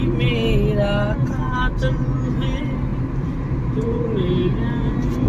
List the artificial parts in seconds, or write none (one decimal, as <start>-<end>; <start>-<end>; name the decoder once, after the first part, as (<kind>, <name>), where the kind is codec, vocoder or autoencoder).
2.9-3.8 (vocoder, BigVGAN v2)